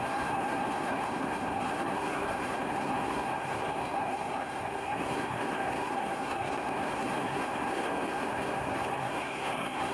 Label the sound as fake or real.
fake